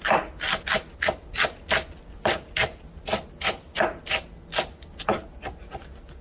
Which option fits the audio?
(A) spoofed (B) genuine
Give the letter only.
B